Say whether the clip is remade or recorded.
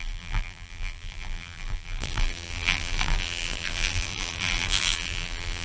remade